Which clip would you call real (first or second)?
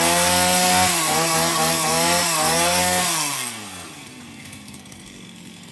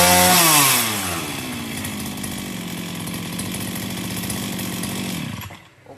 second